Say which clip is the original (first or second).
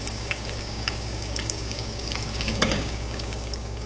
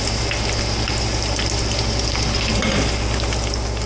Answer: second